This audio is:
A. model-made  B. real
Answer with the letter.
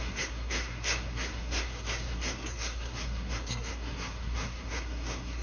A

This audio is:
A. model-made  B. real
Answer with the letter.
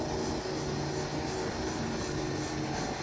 B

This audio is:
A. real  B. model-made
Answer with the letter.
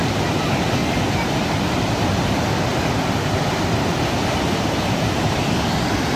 A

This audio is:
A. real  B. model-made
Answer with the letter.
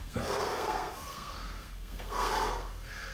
B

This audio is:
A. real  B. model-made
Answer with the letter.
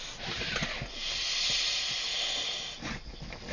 A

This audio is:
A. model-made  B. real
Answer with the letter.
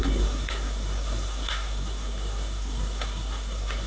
A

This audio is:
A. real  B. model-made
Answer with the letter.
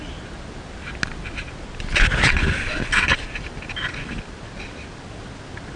A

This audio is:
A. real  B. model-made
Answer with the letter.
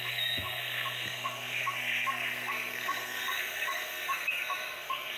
B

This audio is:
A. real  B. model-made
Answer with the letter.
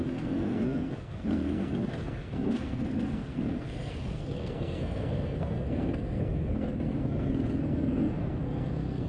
B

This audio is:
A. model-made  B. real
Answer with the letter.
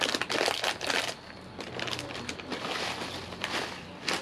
B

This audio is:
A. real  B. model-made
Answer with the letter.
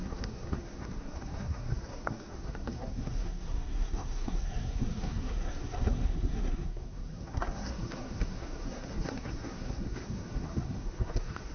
B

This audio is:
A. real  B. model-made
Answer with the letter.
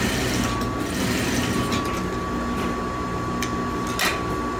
A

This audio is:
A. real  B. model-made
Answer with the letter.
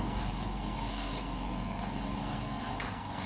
B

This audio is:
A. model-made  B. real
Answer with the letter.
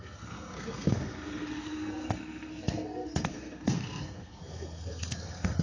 A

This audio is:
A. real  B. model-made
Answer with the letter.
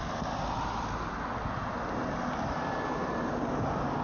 A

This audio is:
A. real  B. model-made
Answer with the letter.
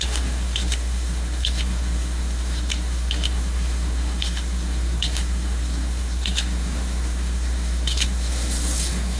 B